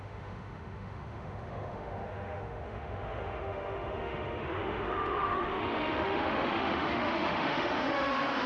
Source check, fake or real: fake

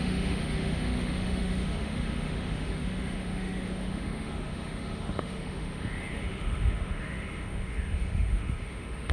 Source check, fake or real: fake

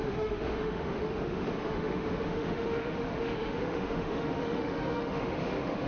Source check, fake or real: fake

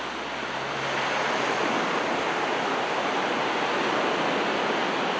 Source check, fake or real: real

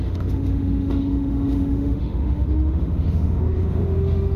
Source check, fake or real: fake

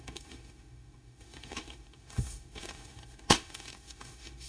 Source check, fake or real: fake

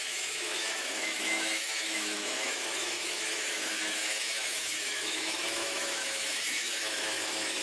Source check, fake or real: fake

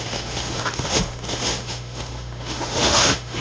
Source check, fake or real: fake